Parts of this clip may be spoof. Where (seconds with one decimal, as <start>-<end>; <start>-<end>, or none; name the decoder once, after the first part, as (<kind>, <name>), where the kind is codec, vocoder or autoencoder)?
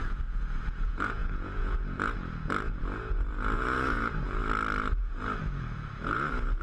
0.0-4.4 (vocoder, Vocos); 5.0-6.6